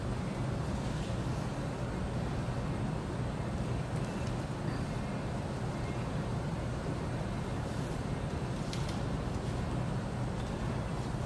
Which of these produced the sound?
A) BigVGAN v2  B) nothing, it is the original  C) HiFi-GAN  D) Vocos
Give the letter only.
A